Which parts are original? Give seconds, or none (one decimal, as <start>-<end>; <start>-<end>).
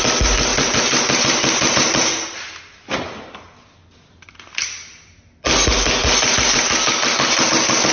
0.0-0.5; 2.6-7.9